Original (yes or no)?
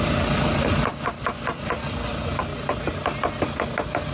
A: yes